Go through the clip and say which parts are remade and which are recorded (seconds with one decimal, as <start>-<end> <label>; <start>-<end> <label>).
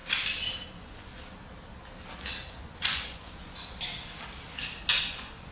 0.0-0.7 recorded; 0.7-1.1 remade; 1.1-2.6 recorded; 2.6-3.9 remade; 3.9-5.0 recorded; 5.0-5.5 remade